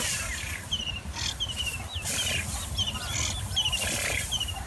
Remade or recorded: recorded